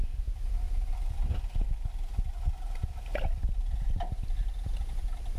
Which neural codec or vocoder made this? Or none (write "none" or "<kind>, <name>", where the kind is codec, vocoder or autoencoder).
none